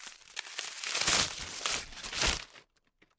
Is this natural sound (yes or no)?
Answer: yes